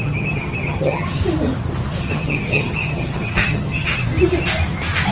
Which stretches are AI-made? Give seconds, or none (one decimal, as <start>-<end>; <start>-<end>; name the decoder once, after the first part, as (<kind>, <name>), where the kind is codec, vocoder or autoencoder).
0.0-1.2 (vocoder, HiFi-GAN); 2.0-4.0

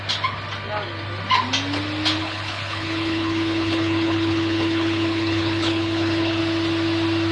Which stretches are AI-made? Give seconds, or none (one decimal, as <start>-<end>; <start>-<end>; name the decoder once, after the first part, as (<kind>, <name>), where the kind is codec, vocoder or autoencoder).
2.2-6.4 (codec, HILCodec)

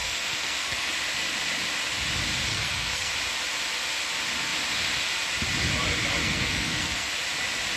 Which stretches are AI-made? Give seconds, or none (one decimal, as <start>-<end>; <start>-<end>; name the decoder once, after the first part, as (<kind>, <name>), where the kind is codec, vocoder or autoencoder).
0.0-0.9 (codec, SNAC); 2.5-3.1; 6.2-7.1

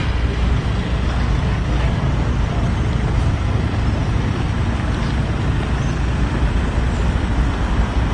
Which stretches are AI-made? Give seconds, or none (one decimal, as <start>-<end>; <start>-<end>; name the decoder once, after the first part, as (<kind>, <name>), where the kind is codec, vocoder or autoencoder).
none

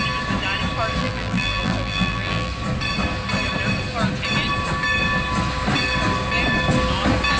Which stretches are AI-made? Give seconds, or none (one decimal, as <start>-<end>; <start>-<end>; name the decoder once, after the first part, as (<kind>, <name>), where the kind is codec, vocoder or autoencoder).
1.0-2.5 (vocoder, BigVGAN v2)

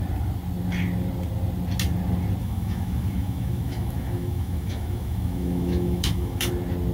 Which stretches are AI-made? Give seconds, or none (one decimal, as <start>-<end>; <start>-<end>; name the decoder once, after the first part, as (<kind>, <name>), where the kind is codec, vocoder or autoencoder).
2.4-6.5 (autoencoder, DAC-VAE)

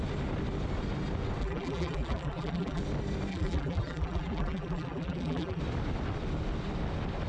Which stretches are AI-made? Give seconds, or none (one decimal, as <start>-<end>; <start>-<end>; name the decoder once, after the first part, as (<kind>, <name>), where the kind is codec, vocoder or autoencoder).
1.4-2.8 (vocoder, BigVGAN v2); 3.3-5.6